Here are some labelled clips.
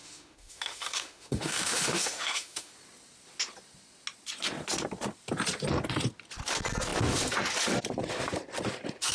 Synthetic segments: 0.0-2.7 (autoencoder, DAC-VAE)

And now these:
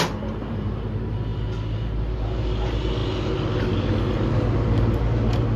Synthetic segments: none